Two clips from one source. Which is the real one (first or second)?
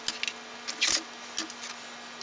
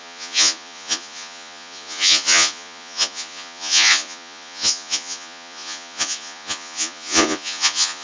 first